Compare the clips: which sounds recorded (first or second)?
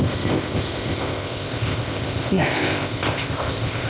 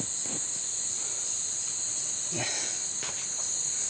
second